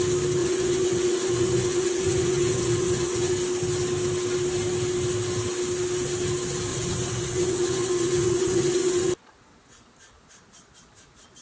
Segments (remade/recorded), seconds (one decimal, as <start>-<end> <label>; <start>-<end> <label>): 0.0-0.4 recorded; 0.4-3.3 remade; 3.3-6.7 recorded; 6.7-9.1 remade; 9.1-11.4 recorded